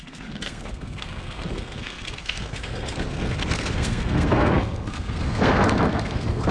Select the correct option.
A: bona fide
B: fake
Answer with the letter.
B